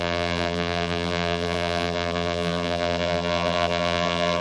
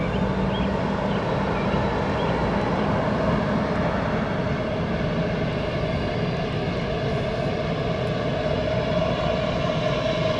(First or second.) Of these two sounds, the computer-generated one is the first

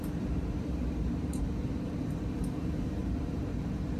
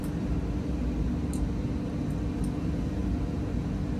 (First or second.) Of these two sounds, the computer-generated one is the first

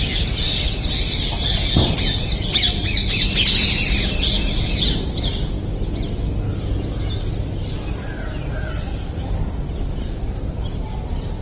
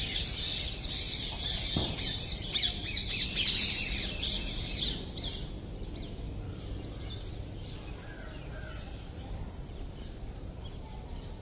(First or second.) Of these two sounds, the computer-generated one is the second